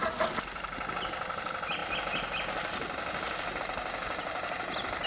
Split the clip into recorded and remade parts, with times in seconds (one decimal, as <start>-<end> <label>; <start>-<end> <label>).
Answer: 0.0-5.1 recorded